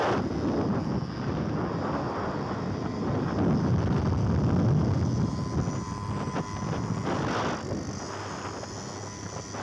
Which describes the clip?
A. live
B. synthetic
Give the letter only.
A